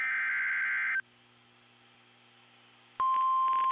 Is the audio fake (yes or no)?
no